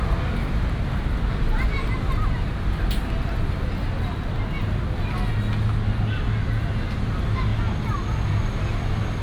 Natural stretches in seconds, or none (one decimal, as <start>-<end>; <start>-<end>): 0.0-9.2